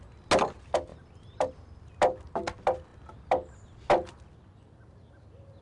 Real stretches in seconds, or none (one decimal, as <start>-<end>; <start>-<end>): 0.0-5.6